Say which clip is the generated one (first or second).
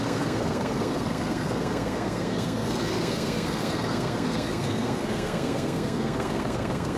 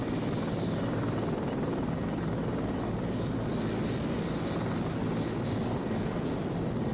first